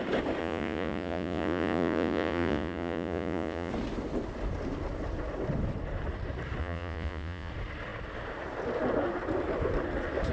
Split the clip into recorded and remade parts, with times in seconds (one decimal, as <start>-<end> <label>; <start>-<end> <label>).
0.0-0.4 recorded; 0.4-3.7 remade; 3.7-6.6 recorded; 6.6-7.5 remade; 7.5-10.3 recorded